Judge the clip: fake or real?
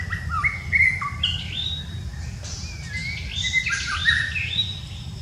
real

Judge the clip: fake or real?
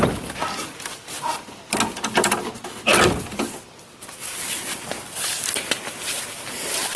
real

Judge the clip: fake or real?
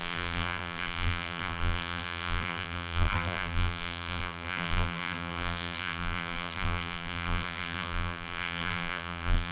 fake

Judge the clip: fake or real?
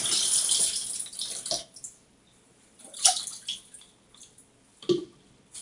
real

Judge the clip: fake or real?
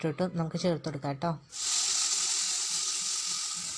real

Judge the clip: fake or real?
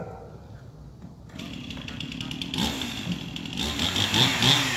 real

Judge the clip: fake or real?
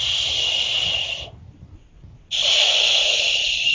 fake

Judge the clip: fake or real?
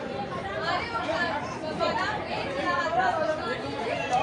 fake